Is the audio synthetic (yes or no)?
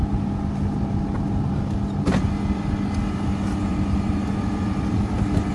no